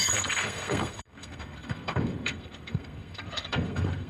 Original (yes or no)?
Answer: no